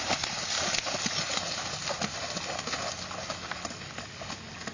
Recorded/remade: recorded